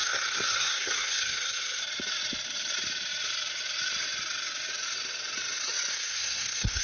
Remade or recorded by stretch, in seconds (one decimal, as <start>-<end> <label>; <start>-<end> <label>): 0.0-1.8 remade; 1.8-5.9 recorded; 5.9-6.8 remade